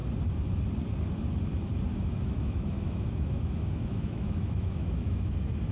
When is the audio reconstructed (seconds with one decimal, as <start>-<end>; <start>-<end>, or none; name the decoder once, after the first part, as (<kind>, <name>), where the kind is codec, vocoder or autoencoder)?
1.9-5.3 (autoencoder, DAC-VAE)